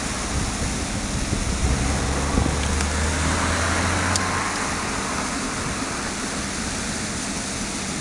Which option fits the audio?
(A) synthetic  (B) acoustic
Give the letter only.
B